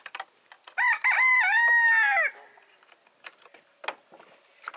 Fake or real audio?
real